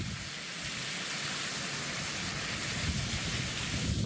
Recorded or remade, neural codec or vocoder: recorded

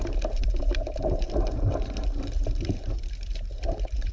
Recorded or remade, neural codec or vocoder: remade, vocoder, BigVGAN v2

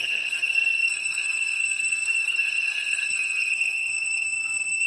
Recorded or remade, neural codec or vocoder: remade, codec, SNAC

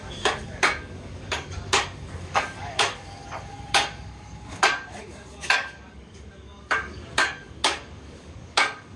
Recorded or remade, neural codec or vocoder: remade, codec, DAC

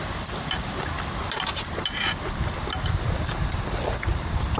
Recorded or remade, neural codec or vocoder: recorded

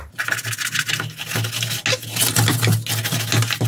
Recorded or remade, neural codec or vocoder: recorded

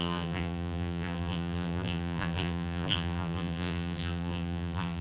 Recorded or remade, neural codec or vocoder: remade, vocoder, BigVGAN v2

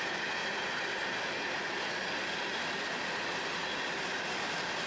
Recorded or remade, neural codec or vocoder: recorded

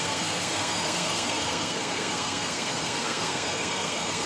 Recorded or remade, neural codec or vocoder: remade, codec, SNAC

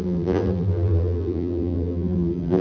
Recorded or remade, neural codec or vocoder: remade, vocoder, BigVGAN v2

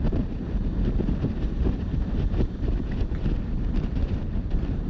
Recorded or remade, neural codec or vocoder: remade, vocoder, BigVGAN v2